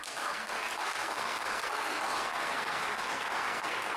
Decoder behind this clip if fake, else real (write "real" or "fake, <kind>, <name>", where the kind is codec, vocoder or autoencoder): fake, codec, SNAC